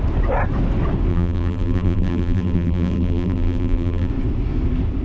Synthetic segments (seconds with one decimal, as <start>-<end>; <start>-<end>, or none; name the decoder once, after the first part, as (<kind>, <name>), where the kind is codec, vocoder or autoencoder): 1.1-4.1 (vocoder, BigVGAN v2)